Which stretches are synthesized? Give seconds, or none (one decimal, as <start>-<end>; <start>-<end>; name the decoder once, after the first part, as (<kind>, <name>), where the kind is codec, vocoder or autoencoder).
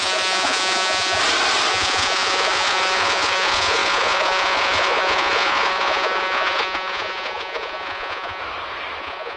0.0-1.2 (vocoder, Vocos); 1.7-8.4; 9.0-9.4